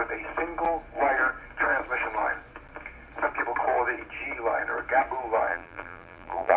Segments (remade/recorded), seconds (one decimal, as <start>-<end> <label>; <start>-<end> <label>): 0.0-5.5 recorded; 5.5-6.6 remade